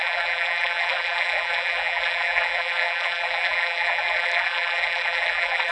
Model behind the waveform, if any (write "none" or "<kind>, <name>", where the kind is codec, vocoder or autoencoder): vocoder, BigVGAN v2